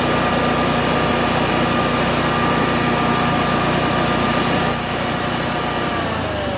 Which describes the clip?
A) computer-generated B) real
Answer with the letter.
B